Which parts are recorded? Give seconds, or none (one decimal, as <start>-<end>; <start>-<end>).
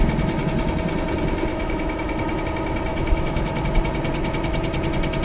0.0-1.5; 2.4-2.9; 3.6-5.2